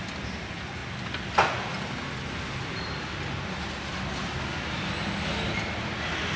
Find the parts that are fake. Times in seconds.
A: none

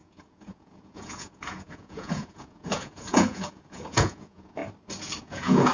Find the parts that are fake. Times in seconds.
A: 0.0-4.6 (vocoder, Vocos); 5.2-5.7